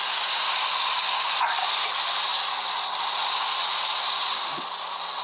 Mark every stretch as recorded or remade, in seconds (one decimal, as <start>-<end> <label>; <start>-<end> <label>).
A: 0.0-5.2 recorded

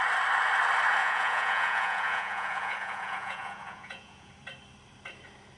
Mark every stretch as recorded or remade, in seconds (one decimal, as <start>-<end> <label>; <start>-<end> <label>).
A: 0.0-1.0 recorded; 1.0-4.3 remade; 4.3-5.6 recorded

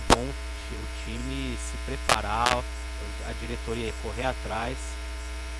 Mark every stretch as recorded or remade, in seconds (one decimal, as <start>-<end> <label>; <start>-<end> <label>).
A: 0.0-1.2 remade; 1.2-2.6 recorded; 2.6-5.6 remade

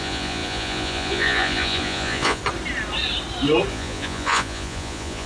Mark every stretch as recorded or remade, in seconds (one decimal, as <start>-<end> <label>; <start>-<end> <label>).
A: 0.0-2.4 remade; 2.4-3.7 recorded; 3.7-5.3 remade

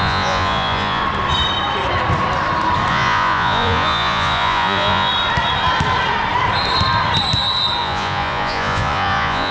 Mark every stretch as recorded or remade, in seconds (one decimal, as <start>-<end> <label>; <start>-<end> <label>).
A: 0.0-1.0 remade; 1.0-2.9 recorded; 2.9-5.1 remade; 5.1-7.8 recorded; 7.8-9.5 remade